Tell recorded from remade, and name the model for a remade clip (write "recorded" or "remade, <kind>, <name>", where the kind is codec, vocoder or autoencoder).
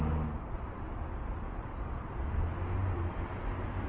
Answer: recorded